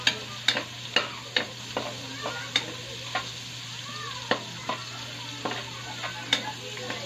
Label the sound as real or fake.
real